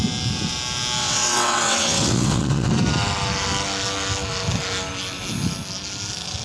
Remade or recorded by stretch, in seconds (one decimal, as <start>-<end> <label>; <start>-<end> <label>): 0.0-1.0 recorded; 1.0-2.7 remade; 2.7-6.4 recorded